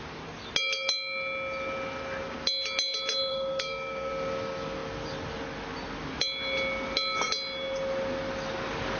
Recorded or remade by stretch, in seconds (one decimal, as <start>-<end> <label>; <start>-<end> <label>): 0.0-3.3 recorded; 3.3-4.1 remade; 4.1-9.0 recorded